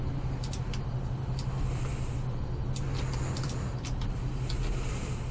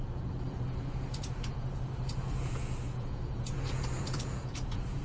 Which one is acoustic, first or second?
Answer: first